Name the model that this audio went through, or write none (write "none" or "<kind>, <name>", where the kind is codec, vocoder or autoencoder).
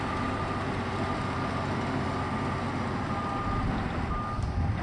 none